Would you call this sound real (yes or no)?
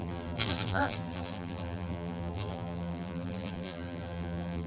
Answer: no